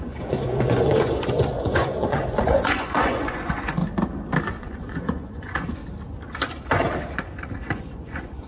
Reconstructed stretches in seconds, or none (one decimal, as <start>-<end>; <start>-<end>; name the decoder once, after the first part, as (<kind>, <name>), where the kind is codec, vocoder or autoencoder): 0.0-3.8 (vocoder, Vocos); 4.6-5.8; 7.6-8.5